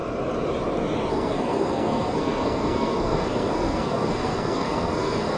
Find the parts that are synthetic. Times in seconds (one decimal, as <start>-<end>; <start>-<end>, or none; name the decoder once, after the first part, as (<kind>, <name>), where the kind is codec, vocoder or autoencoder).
1.1-5.4 (codec, SNAC)